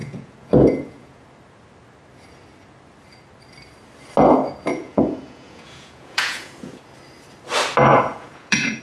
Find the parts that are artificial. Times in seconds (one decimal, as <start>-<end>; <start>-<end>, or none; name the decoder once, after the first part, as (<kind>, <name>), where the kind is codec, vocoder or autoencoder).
0.0-1.2 (vocoder, Vocos); 4.7-6.8; 7.9-8.8